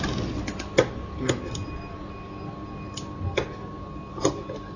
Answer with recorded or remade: recorded